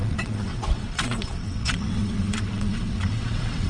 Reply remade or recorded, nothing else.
remade